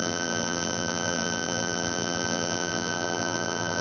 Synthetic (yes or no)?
yes